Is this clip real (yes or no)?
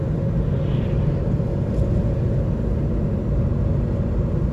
yes